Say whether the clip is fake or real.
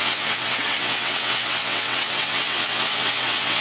fake